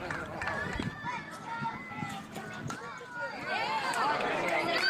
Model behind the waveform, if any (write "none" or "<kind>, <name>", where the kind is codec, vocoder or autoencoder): none